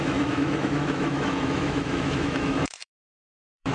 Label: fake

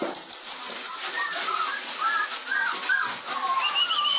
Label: real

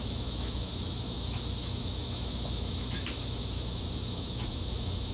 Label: fake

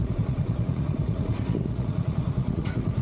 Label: fake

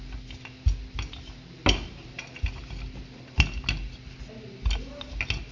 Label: real